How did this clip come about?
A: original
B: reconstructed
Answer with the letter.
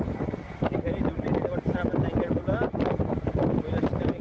A